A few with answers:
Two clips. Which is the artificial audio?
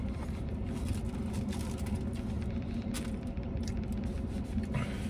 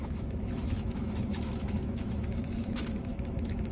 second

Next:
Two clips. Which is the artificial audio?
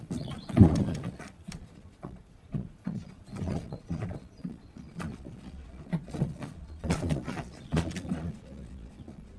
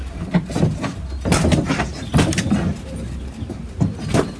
first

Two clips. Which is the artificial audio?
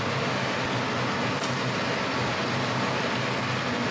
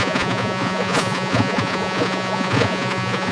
second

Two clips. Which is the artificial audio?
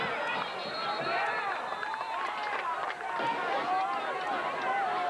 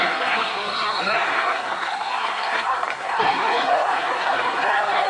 second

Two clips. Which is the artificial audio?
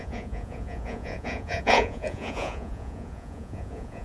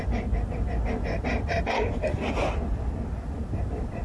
first